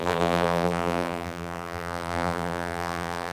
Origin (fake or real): fake